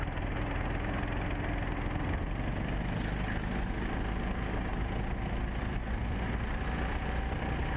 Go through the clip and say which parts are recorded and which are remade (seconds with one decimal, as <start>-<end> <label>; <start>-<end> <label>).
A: 0.0-7.8 recorded